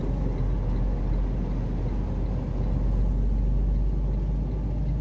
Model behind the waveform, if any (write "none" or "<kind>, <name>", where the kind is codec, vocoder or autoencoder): none